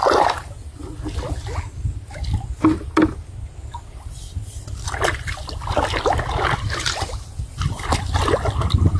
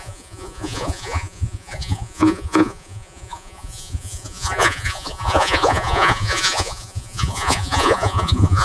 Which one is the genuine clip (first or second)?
first